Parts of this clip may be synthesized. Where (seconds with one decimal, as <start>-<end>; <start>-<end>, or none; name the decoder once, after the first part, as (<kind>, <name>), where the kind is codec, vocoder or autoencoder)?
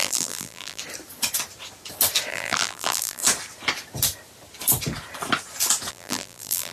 0.0-0.8 (vocoder, BigVGAN v2); 2.3-3.2; 5.9-6.7